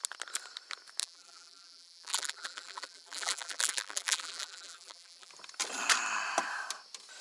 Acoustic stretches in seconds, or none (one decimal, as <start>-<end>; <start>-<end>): 0.0-1.0; 5.3-7.2

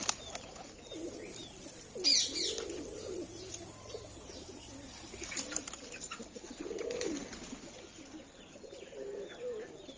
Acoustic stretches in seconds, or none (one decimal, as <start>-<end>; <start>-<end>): 0.0-10.0

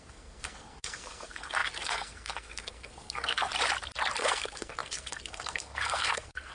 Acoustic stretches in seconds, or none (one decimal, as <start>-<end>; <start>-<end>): 3.5-4.2

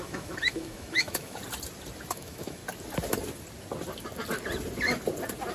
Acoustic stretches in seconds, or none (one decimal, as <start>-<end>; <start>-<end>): 1.4-2.1; 2.6-5.5

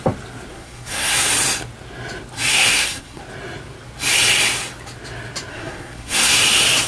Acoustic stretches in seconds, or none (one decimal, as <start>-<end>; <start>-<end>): 0.0-0.5; 1.3-2.5; 3.2-5.5; 6.4-6.9

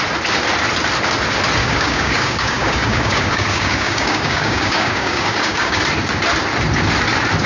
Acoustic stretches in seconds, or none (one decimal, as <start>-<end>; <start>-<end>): 0.0-1.6; 5.8-7.5

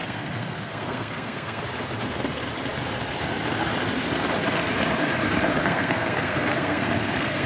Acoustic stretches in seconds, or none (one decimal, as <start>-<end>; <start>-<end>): 1.6-5.5